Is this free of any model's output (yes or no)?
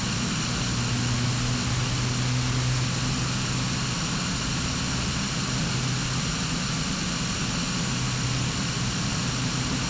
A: yes